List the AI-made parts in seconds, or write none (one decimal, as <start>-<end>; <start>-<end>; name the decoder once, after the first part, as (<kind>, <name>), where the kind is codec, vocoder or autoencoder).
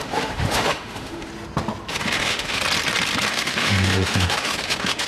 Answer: 0.0-1.3 (autoencoder, DAC-VAE); 1.9-2.6; 3.3-5.1